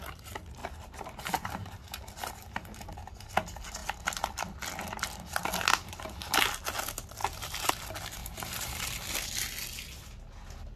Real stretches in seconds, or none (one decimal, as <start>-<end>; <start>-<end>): 0.0-0.6; 2.1-7.2; 7.7-8.2; 8.8-10.8